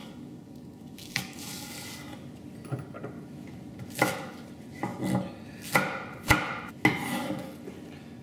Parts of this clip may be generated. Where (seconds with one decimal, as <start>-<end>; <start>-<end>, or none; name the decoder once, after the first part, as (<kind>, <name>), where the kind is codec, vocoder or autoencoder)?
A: 0.0-1.7 (codec, DAC)